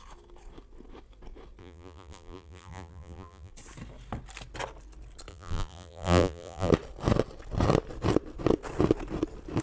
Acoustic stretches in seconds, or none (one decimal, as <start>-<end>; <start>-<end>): 0.0-1.6; 3.5-5.3; 6.7-9.6